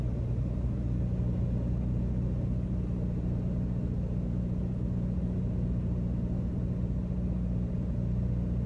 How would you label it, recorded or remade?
recorded